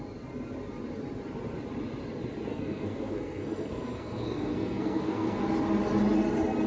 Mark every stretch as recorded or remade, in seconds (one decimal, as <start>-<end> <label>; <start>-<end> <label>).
0.0-2.5 recorded; 2.5-5.4 remade; 5.4-6.7 recorded